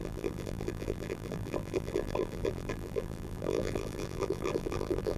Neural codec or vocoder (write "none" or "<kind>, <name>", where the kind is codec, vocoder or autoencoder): vocoder, BigVGAN v2